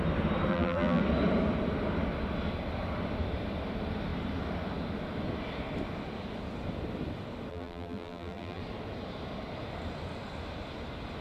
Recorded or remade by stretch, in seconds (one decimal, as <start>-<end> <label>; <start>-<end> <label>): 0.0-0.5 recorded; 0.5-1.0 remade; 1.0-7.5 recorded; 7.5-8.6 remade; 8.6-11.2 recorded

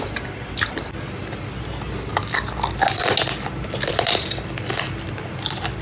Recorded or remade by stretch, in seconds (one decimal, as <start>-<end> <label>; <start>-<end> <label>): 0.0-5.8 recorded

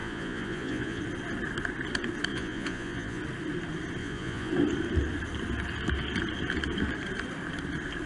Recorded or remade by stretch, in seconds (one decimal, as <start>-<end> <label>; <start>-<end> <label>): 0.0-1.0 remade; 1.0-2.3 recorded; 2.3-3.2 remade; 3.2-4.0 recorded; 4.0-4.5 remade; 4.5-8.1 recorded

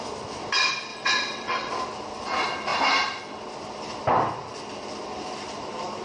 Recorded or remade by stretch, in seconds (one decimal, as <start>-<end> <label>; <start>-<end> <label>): 0.0-0.9 recorded; 0.9-1.7 remade; 1.7-6.0 recorded

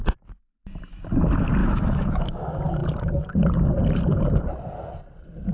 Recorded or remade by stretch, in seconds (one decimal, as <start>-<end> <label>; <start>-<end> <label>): 0.0-1.6 recorded; 1.6-2.4 remade; 2.4-5.5 recorded